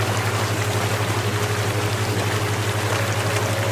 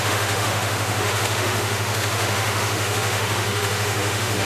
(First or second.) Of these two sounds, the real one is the first